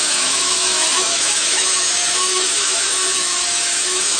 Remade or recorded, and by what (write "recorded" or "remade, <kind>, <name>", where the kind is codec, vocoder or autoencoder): remade, autoencoder, DAC-VAE